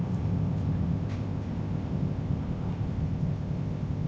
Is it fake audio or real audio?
fake